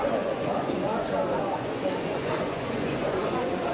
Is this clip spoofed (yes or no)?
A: yes